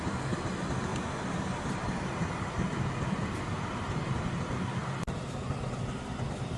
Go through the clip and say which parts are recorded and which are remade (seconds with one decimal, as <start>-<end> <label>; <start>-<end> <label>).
0.0-0.9 recorded; 0.9-4.1 remade; 4.1-4.8 recorded; 4.8-5.5 remade; 5.5-6.6 recorded

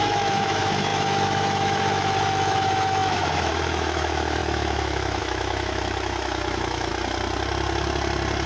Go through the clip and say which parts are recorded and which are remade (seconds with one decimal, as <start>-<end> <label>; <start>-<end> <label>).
0.0-6.9 remade; 6.9-8.5 recorded

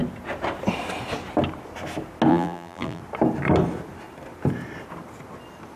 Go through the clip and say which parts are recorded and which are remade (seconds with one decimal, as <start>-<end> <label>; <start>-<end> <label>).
0.0-2.3 recorded; 2.3-3.0 remade; 3.0-5.8 recorded